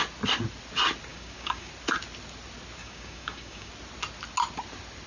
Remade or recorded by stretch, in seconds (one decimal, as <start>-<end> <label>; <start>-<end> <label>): 0.0-1.1 recorded; 1.1-1.7 remade; 1.7-2.8 recorded; 2.8-3.7 remade; 3.7-5.1 recorded